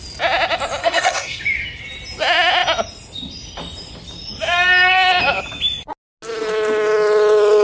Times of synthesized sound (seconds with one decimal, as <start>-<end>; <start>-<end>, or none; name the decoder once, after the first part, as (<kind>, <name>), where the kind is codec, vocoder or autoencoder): 0.8-1.4 (codec, SNAC)